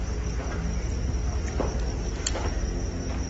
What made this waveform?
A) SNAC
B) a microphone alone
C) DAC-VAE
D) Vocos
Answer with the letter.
B